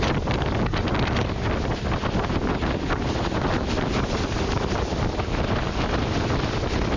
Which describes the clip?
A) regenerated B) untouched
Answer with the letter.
B